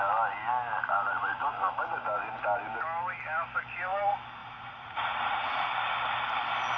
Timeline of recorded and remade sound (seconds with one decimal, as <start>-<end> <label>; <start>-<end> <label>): 0.0-4.4 recorded; 4.4-5.7 remade; 5.7-6.8 recorded